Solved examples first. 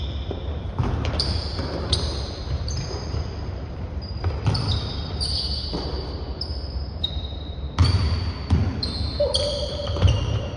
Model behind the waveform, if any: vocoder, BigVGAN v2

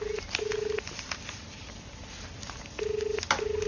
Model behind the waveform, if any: none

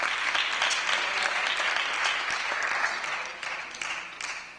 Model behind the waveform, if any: none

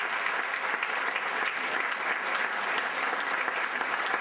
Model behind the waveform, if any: vocoder, BigVGAN v2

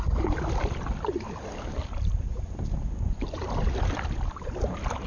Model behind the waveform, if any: none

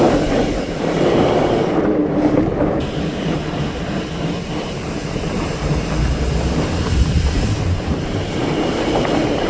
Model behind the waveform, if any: vocoder, BigVGAN v2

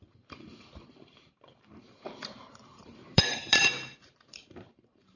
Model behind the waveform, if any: vocoder, BigVGAN v2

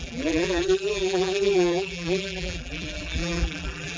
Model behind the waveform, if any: vocoder, BigVGAN v2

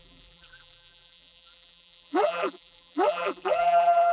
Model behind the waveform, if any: vocoder, BigVGAN v2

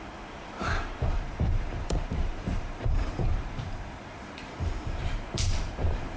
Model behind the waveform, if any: vocoder, BigVGAN v2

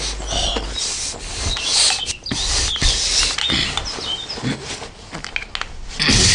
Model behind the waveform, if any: none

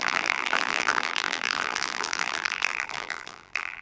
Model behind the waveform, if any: vocoder, BigVGAN v2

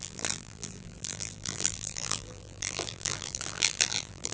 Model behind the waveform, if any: vocoder, BigVGAN v2